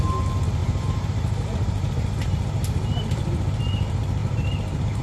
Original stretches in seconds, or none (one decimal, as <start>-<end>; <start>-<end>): 0.0-0.6; 3.6-4.2

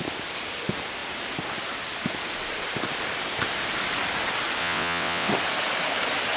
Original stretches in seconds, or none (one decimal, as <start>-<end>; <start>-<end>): 0.0-4.6; 5.3-6.4

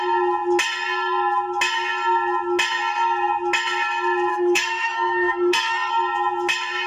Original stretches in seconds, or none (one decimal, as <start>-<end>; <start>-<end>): 0.0-4.3; 5.9-6.9

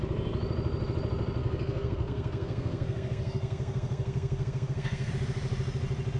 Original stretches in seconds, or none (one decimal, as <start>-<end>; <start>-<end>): 0.0-1.4; 5.1-6.2

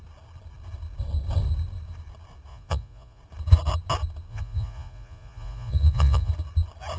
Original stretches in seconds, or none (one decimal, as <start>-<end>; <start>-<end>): 0.0-2.5; 3.2-4.3; 6.3-7.0

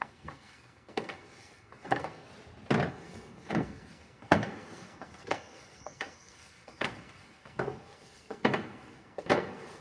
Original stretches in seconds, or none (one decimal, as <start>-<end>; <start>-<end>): 2.3-2.9

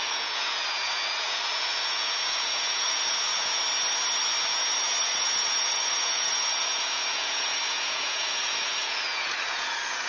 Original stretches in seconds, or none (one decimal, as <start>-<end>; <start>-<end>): 3.6-5.0

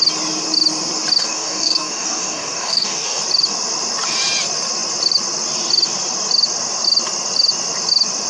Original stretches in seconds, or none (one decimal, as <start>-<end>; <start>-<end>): 0.0-1.2; 3.2-8.3